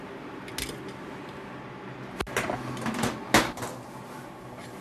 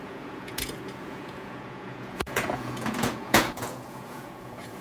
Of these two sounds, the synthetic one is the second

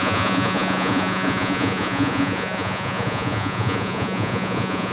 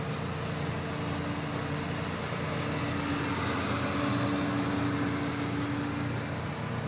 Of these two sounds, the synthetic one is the first